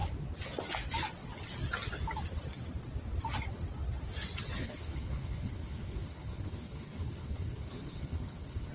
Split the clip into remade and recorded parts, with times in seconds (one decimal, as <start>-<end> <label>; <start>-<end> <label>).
0.0-4.6 recorded; 4.6-8.7 remade